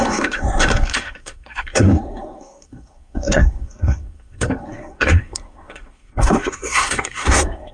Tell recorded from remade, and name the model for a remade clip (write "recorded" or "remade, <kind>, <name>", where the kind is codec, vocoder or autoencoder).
remade, codec, SNAC